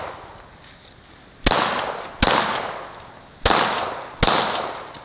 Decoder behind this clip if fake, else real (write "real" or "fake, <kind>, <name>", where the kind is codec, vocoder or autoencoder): real